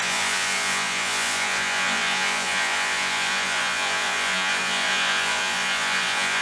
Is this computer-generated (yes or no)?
yes